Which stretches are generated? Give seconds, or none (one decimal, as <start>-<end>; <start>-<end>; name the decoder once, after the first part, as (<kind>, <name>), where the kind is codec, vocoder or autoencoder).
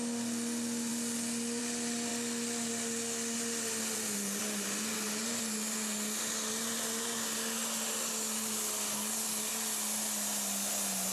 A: none